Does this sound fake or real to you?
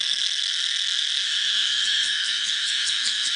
fake